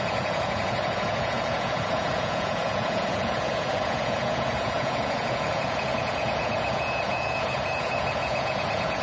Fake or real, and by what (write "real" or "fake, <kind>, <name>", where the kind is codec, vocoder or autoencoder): fake, vocoder, Vocos